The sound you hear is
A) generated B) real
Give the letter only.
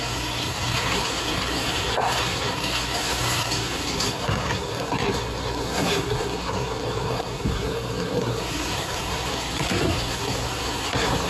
A